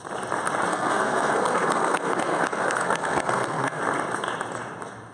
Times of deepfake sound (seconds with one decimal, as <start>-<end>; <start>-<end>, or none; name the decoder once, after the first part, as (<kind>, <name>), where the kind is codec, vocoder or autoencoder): 0.7-3.8 (codec, SNAC)